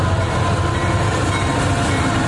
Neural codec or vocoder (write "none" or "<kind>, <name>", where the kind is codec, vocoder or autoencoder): none